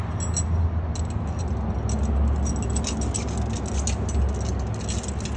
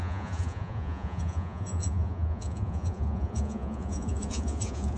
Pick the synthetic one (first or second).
second